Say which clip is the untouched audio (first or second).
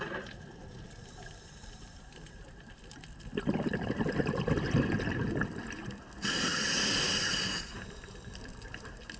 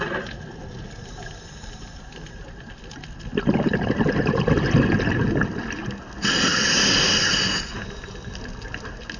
second